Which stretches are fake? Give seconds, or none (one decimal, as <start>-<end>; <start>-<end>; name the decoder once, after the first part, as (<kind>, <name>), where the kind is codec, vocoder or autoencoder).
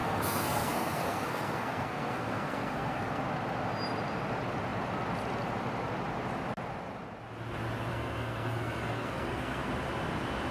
0.0-3.2 (codec, SNAC); 7.9-9.7